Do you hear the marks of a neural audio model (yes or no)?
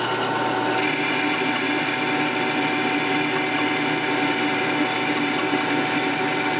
no